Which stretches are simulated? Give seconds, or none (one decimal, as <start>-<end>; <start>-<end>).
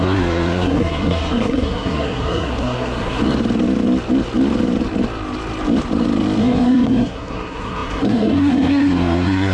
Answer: 0.0-3.2; 6.4-9.5